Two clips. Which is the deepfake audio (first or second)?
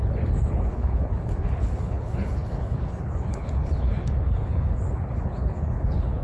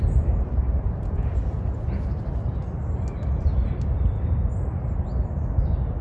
first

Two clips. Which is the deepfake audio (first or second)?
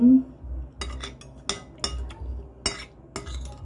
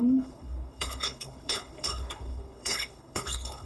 second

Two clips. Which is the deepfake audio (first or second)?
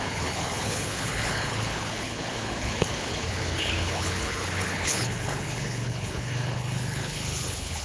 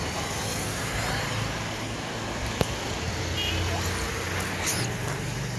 first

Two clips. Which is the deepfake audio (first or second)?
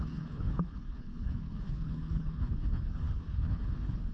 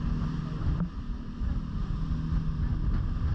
first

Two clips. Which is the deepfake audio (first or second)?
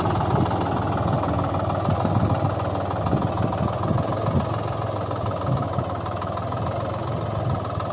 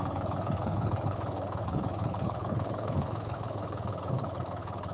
second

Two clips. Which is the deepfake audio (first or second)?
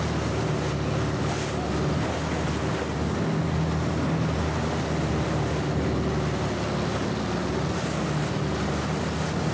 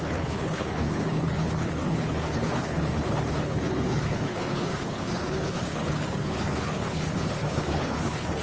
second